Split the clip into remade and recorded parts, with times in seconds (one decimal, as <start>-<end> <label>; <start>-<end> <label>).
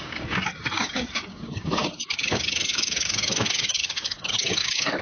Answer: 0.0-5.0 remade